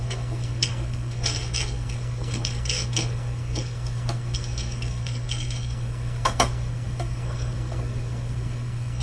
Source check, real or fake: fake